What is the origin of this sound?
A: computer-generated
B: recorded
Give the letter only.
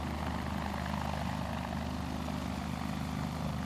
B